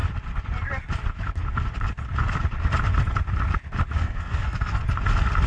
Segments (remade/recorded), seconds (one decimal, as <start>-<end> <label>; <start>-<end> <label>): 0.0-4.0 recorded; 4.0-4.8 remade; 4.8-5.5 recorded